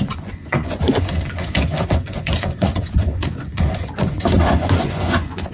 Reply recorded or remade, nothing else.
remade